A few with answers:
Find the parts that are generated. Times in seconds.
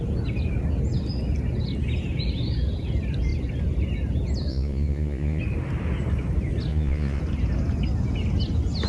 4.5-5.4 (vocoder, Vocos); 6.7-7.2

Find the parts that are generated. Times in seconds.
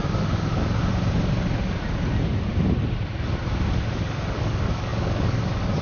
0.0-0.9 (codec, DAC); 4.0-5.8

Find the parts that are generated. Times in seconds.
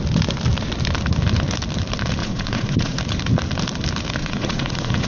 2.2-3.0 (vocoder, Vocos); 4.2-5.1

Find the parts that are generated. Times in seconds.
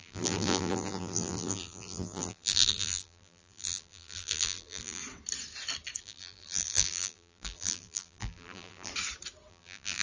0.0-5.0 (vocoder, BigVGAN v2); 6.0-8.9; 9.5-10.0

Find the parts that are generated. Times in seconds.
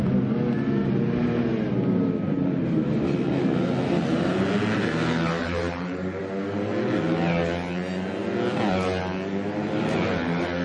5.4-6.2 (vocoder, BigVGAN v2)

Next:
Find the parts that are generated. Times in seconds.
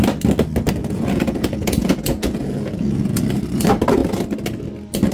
0.8-3.2 (vocoder, Vocos)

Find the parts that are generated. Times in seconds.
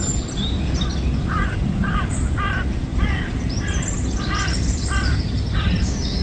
1.2-2.3 (vocoder, BigVGAN v2); 2.9-3.6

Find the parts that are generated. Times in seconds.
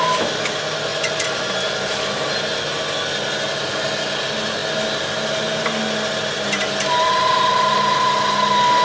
none